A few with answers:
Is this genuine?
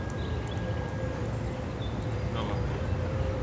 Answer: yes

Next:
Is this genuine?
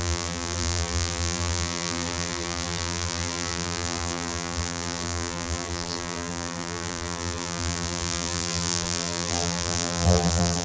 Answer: no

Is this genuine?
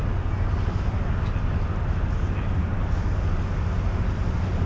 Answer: yes